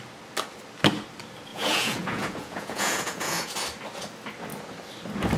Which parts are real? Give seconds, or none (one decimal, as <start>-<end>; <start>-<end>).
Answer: 0.0-1.5; 3.5-5.4